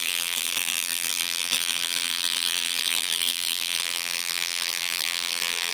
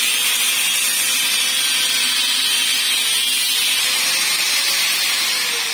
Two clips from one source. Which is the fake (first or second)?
first